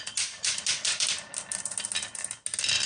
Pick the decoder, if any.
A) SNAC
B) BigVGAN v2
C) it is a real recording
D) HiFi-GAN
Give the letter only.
C